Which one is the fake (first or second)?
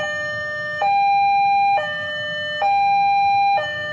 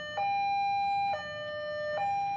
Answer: first